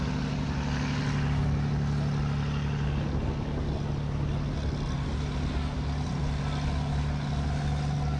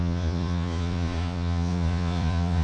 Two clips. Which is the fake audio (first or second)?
second